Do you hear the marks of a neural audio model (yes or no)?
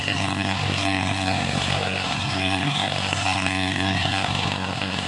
yes